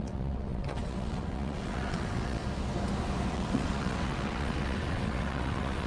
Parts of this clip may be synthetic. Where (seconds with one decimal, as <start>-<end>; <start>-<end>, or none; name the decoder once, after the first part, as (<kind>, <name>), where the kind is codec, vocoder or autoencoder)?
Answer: 0.0-2.4 (vocoder, WaveNeXt); 3.3-5.9